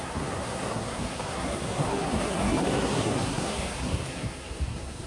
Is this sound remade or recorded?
remade